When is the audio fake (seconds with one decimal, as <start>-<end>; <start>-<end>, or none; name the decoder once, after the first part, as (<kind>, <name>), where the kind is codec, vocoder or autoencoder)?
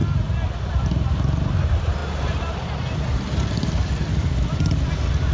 none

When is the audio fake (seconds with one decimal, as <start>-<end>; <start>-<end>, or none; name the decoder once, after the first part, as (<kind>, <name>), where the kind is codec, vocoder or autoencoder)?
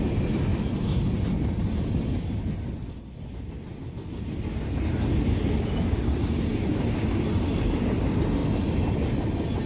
none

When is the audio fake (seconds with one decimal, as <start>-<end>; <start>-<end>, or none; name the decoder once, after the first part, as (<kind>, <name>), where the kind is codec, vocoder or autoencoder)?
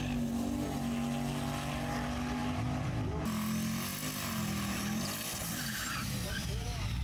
none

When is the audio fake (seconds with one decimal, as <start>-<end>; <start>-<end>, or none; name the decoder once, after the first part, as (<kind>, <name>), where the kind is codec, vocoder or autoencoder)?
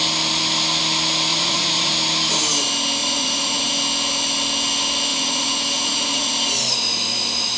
1.3-1.9 (vocoder, Vocos); 3.0-3.7; 5.1-6.3